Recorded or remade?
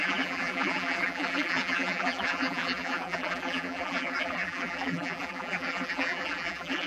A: remade